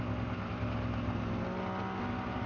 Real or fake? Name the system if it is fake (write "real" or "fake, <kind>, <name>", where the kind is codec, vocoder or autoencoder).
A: real